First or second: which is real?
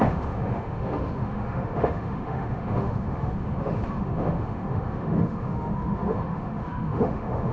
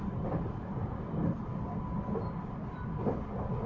second